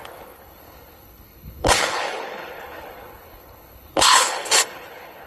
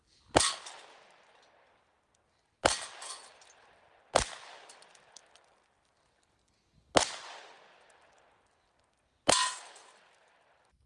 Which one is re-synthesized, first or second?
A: first